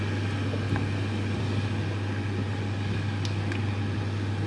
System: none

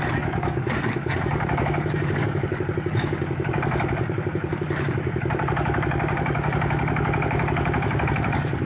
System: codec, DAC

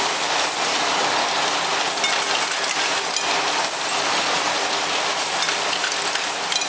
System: none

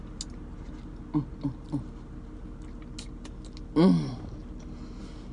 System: none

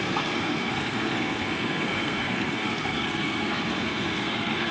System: codec, SNAC